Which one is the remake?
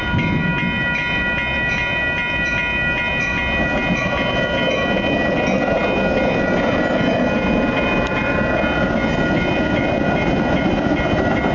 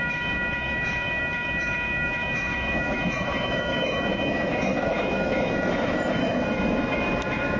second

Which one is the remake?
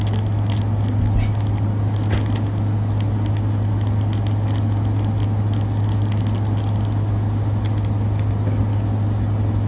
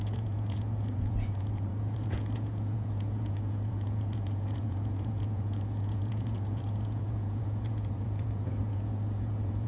second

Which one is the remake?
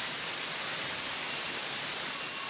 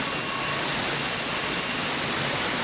first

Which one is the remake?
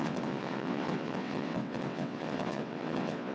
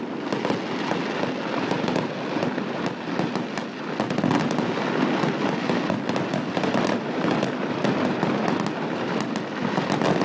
first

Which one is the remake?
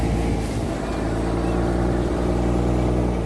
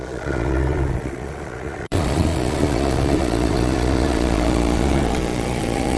second